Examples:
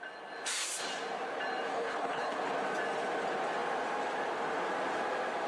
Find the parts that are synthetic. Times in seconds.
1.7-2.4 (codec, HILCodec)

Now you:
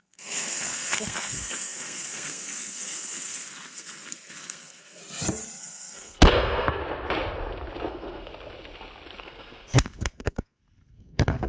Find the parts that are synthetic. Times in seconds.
0.0-5.0 (codec, SNAC); 5.6-6.8; 7.9-8.3; 9.2-11.5

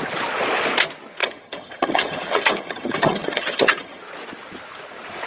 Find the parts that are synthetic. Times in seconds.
1.2-4.0 (vocoder, HiFi-GAN)

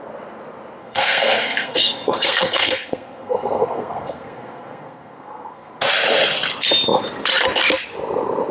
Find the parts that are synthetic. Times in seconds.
0.8-5.7 (codec, SNAC)

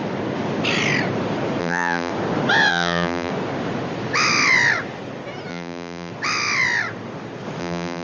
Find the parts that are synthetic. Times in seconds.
1.6-2.1 (vocoder, BigVGAN v2); 2.7-3.3; 5.5-6.1; 7.6-8.0

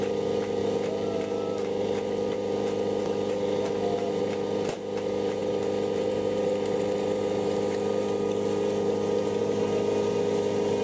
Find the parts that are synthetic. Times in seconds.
none

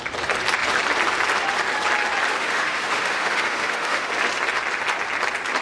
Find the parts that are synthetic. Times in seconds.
2.3-4.1 (autoencoder, DAC-VAE)

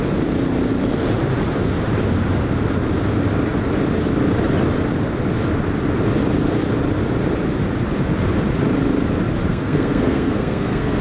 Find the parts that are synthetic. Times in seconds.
9.5-11.0 (codec, SNAC)